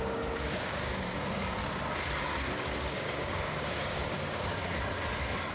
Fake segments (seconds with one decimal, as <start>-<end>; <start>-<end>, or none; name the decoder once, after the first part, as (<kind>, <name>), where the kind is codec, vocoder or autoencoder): 0.0-1.6 (codec, DAC); 2.9-4.6